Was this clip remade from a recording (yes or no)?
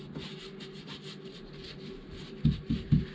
no